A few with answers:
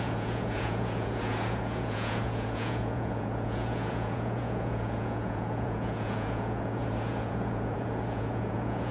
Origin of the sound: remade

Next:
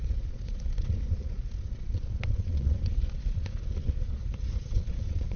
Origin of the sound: remade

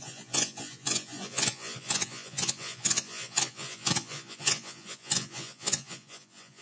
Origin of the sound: remade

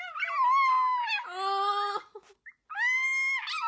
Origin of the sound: recorded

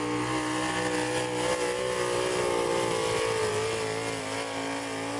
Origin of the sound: recorded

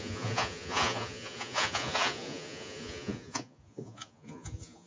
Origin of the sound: remade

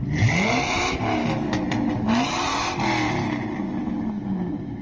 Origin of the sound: recorded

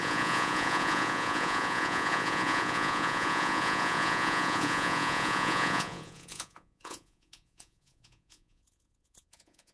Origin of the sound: remade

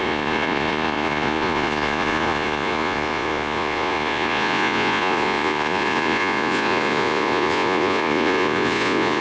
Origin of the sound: remade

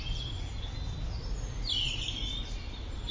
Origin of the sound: recorded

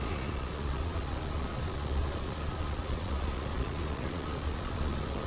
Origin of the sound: remade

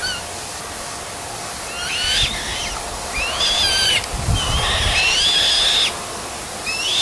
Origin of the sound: recorded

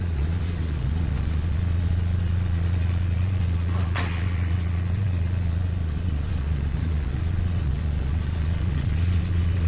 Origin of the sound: remade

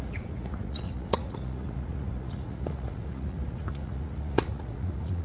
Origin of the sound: remade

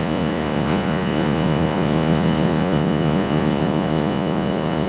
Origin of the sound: remade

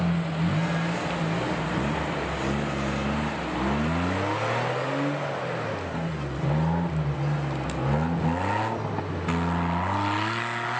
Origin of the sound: recorded